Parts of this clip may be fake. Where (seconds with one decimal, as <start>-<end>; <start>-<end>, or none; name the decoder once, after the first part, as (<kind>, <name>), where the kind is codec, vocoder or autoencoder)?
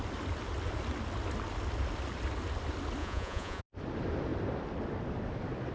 3.0-3.6 (vocoder, Vocos)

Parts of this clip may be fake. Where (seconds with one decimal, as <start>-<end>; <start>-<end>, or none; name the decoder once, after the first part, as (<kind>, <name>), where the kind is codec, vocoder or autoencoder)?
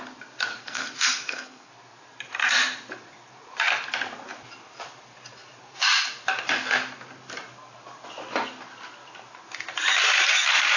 0.5-1.7 (codec, SNAC)